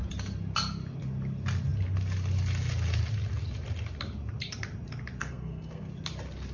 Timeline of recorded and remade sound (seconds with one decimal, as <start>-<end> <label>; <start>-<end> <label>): 0.0-5.2 recorded; 5.2-5.9 remade; 5.9-6.5 recorded